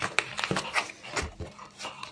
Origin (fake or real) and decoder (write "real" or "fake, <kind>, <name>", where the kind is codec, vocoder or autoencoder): real